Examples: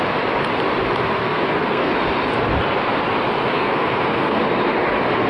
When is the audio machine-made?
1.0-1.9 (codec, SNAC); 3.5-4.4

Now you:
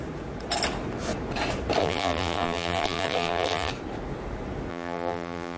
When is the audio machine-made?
1.8-3.7 (vocoder, BigVGAN v2); 4.7-5.6

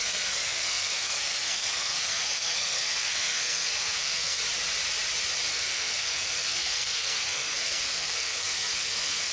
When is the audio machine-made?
0.0-4.4 (codec, SNAC); 5.5-9.3

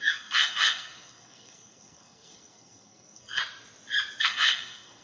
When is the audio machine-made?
0.0-3.4 (codec, SNAC); 4.2-5.0

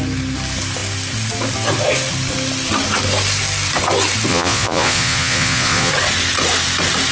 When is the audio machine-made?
4.3-5.9 (vocoder, Vocos)